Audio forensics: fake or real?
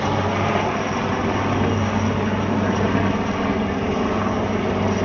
real